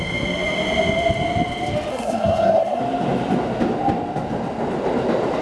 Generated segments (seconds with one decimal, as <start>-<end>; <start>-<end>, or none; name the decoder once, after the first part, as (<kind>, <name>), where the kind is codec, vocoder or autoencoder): 1.9-2.8 (codec, SNAC)